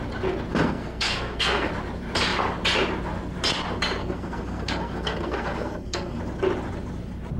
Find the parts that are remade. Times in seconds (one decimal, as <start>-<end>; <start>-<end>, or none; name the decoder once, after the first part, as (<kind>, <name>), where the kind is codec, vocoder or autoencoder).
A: 0.5-1.7 (codec, SNAC); 4.0-6.2